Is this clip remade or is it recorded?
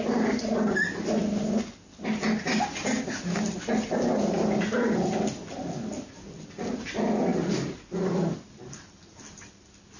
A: recorded